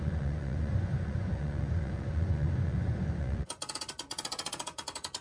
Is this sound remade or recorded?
remade